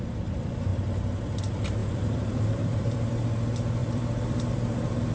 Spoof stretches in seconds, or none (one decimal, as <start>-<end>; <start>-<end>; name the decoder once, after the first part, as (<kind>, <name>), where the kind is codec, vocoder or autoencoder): 1.8-3.1 (vocoder, BigVGAN v2); 3.8-5.1